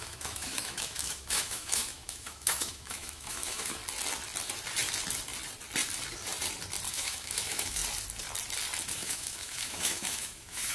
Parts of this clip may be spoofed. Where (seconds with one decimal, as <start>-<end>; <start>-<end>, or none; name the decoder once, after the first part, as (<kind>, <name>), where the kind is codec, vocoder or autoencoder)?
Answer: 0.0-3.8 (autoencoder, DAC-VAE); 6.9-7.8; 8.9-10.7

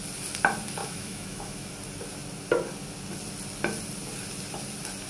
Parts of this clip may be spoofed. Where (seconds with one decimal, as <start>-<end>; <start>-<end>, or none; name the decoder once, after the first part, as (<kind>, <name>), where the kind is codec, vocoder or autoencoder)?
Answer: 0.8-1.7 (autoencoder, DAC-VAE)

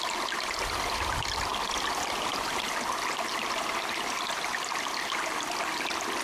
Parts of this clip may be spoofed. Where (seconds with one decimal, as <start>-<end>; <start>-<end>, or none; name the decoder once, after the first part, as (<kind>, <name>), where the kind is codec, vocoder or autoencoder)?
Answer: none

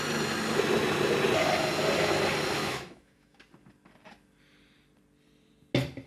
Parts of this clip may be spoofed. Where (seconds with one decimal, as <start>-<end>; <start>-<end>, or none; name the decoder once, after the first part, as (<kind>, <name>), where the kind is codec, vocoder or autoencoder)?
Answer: 2.6-3.4 (autoencoder, DAC-VAE)

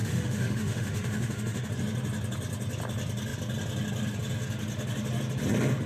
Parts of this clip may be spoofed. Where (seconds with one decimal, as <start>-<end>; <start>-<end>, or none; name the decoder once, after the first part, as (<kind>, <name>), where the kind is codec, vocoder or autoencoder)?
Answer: 0.0-1.7 (autoencoder, DAC-VAE)

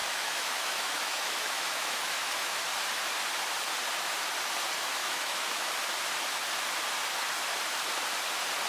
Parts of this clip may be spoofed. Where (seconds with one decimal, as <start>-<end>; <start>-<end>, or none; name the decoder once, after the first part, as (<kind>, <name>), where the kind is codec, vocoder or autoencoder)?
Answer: 0.0-2.6 (autoencoder, DAC-VAE); 5.0-5.7

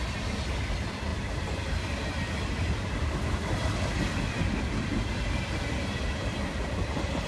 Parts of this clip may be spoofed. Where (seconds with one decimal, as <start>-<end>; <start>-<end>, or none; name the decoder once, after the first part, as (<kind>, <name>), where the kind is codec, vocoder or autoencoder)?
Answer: none

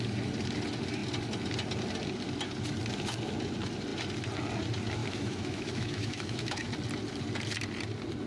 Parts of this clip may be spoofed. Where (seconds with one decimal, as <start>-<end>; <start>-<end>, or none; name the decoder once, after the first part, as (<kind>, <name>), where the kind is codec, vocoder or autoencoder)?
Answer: 5.0-6.7 (autoencoder, DAC-VAE)